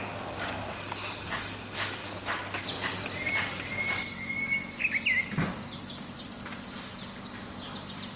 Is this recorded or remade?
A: recorded